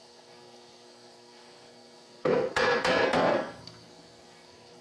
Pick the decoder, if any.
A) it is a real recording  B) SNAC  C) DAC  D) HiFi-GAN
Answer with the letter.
B